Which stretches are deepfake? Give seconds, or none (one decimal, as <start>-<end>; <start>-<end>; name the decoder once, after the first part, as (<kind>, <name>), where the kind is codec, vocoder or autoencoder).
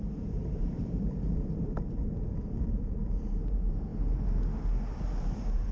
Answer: 0.0-3.9 (vocoder, BigVGAN v2); 5.0-5.7